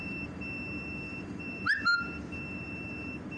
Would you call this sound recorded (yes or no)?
no